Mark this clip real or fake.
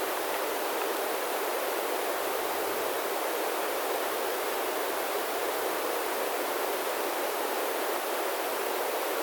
fake